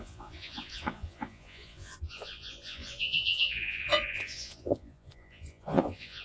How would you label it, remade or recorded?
remade